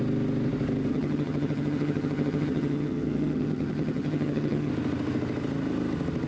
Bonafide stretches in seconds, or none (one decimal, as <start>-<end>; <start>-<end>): 0.0-0.9; 4.7-6.3